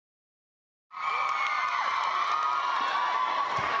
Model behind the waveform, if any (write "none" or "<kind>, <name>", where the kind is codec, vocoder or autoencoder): none